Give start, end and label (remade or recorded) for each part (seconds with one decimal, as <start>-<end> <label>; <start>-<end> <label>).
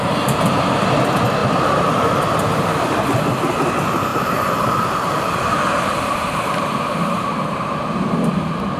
0.0-1.4 recorded; 1.4-2.8 remade; 2.8-4.1 recorded; 4.1-7.3 remade; 7.3-8.8 recorded